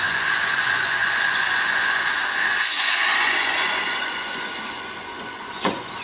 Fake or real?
fake